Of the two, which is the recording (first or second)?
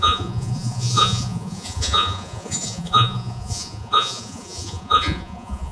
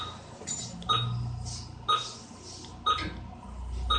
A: second